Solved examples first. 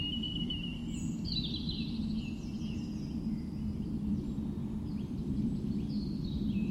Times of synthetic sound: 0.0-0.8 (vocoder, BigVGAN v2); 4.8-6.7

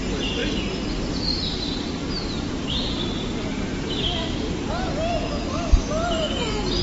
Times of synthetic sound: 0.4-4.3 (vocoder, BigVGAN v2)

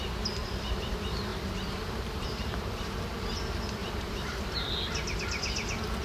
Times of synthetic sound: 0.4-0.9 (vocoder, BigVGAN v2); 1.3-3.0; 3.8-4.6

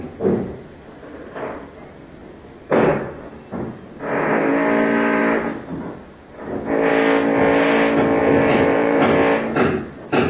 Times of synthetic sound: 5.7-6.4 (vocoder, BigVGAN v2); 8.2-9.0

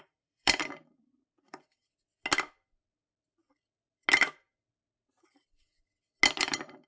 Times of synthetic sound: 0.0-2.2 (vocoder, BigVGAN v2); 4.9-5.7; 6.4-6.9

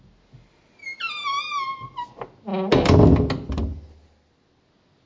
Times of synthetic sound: none